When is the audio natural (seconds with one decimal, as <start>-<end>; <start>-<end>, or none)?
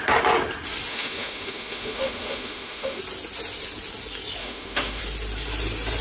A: 0.0-0.9; 3.0-4.4; 5.0-6.0